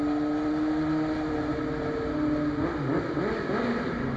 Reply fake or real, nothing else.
real